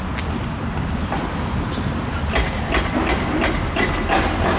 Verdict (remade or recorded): recorded